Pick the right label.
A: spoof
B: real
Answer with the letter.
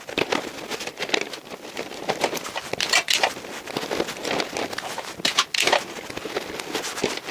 B